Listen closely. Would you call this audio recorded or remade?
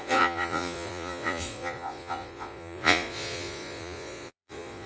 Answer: remade